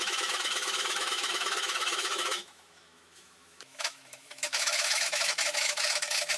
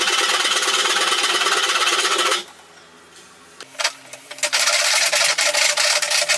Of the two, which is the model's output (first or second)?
first